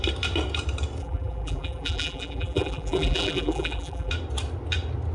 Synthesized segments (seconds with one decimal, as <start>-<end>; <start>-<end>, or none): 1.0-4.1

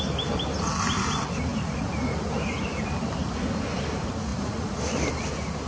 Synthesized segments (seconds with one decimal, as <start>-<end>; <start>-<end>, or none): 1.5-2.8; 4.3-5.1

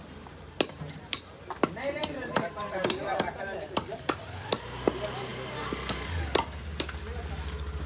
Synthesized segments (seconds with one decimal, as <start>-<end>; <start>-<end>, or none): 0.0-1.2; 2.0-4.2

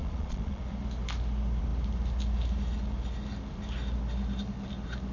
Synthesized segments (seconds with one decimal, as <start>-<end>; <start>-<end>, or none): 0.0-0.6